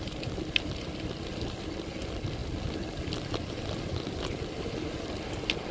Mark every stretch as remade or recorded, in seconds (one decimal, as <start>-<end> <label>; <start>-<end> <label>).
0.0-5.7 recorded

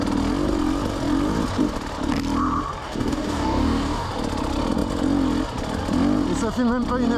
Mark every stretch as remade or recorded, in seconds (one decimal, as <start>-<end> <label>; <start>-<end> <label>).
0.0-2.8 recorded; 2.8-4.1 remade; 4.1-7.2 recorded

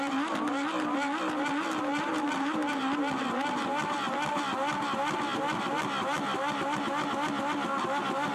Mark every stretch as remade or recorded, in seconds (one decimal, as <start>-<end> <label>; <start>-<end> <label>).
0.0-8.3 recorded